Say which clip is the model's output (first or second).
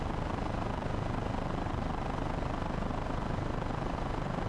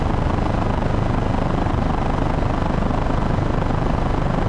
first